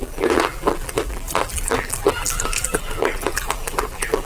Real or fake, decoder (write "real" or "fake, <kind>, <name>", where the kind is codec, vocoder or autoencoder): fake, vocoder, BigVGAN v2